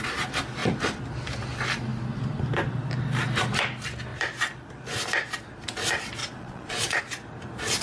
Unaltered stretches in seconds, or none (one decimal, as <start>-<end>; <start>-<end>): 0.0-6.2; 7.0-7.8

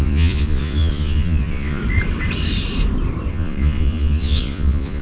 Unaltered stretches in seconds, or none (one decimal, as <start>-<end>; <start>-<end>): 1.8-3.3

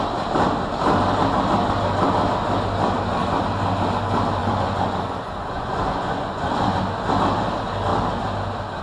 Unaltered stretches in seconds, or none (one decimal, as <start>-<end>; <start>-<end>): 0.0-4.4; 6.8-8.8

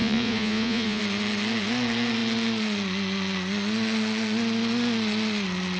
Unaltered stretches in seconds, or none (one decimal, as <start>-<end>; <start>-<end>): 1.0-5.8

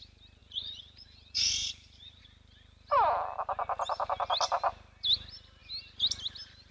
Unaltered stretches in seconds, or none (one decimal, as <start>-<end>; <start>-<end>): 0.0-0.4; 2.2-6.7

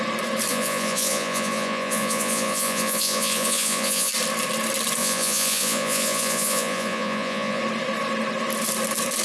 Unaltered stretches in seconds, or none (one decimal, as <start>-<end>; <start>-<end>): 0.0-0.5; 4.1-5.0; 7.6-9.2